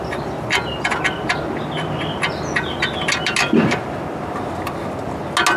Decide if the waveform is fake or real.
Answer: real